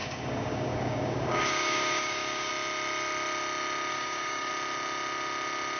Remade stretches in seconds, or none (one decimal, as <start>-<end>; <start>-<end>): 0.0-2.5; 3.9-4.5